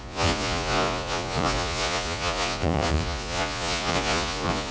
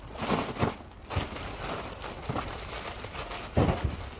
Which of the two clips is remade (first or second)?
first